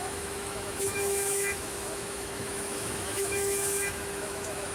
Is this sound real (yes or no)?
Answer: no